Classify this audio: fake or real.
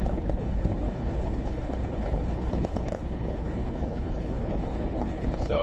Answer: fake